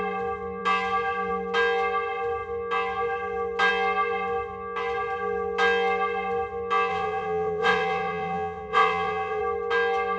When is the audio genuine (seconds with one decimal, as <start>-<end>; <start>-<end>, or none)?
0.0-6.9; 9.4-10.2